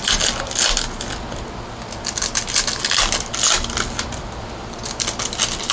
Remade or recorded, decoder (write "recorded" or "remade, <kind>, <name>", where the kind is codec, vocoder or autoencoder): recorded